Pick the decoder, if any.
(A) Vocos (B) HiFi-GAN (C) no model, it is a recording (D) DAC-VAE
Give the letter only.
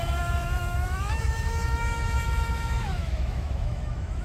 D